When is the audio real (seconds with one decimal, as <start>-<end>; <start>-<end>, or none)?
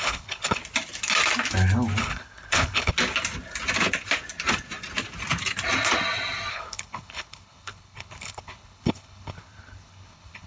0.6-2.0; 2.9-6.5